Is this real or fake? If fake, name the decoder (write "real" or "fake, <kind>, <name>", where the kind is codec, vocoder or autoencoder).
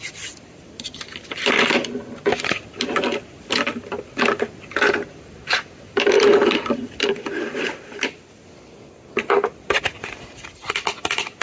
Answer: real